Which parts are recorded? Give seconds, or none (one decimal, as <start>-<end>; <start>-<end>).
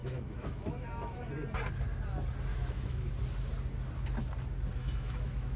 1.3-2.5; 3.1-4.8